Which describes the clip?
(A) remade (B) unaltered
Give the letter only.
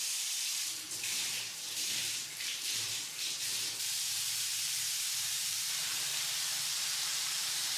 A